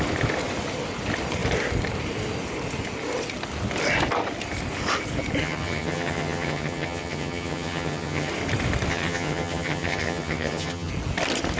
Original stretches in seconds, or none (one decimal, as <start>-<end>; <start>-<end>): 0.0-5.4; 8.3-8.9; 10.9-11.6